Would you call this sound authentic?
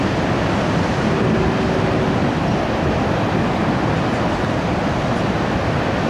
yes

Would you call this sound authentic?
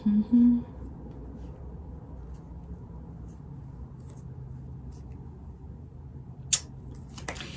yes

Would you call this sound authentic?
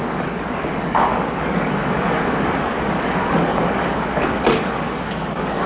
no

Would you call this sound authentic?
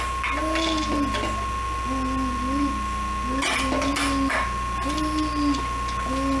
yes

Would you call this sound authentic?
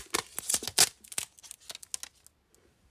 yes